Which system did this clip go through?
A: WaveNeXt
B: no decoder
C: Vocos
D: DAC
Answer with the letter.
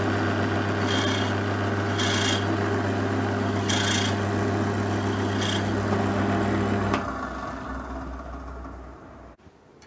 B